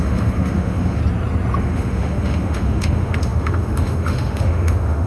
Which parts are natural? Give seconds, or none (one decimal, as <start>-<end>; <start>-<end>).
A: 1.0-1.6